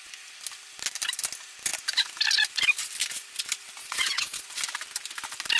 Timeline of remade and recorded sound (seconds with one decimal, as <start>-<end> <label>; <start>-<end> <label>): 0.0-3.8 recorded; 3.8-4.4 remade; 4.4-5.6 recorded